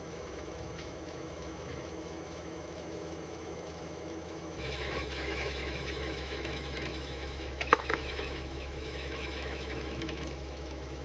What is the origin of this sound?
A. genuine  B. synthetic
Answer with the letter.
B